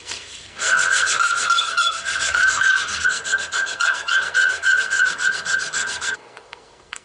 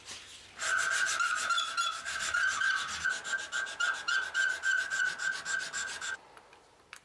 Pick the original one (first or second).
second